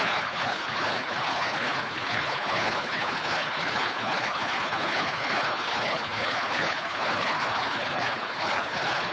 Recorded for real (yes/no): no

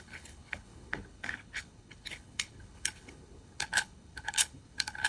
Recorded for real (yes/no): no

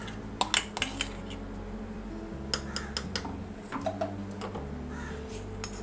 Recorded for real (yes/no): yes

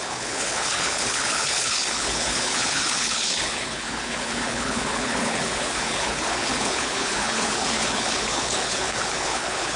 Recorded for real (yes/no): no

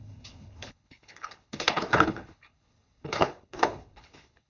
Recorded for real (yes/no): no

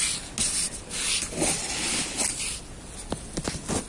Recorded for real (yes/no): yes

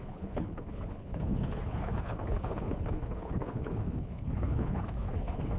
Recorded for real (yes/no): no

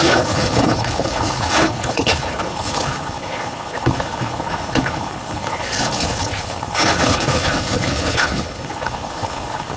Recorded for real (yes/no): no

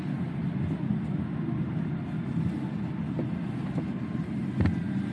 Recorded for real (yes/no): yes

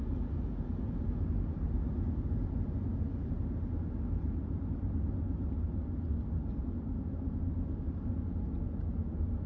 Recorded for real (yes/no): yes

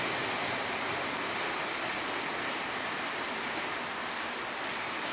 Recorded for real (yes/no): yes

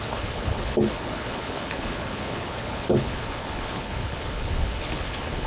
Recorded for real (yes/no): no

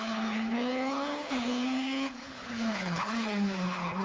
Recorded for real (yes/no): no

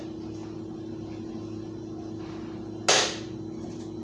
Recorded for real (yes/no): yes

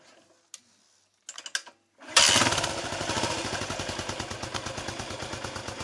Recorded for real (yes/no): yes